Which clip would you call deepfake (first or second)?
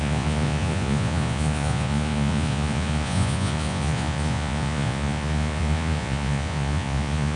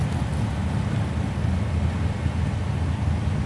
first